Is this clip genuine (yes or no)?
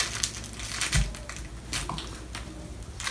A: yes